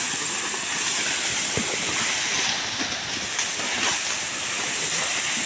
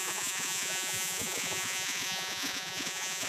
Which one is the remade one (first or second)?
second